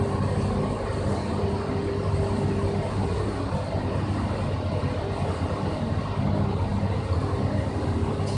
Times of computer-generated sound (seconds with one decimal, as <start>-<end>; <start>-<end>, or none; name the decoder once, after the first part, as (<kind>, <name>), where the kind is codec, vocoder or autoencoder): 2.9-3.5 (codec, SNAC)